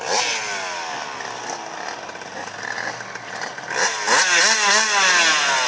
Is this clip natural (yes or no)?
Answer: yes